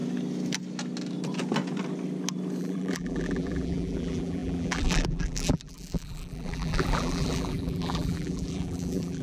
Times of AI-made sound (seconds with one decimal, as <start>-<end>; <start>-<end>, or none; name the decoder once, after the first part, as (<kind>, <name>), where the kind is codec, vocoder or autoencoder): 2.6-9.2 (vocoder, BigVGAN v2)